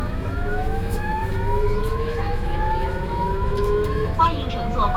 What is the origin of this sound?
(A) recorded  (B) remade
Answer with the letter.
B